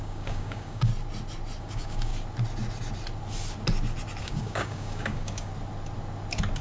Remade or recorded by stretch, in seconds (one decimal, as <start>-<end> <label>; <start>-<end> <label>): 0.0-0.9 remade; 0.9-1.6 recorded; 1.6-2.1 remade; 2.1-4.2 recorded; 4.2-5.5 remade; 5.5-6.6 recorded